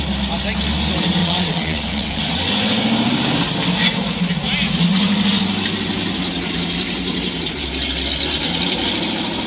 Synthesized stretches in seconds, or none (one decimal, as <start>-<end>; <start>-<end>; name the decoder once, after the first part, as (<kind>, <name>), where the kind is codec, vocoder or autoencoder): 1.2-2.2 (vocoder, WaveNeXt)